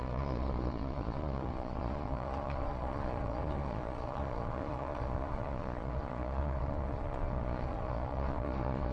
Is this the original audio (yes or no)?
no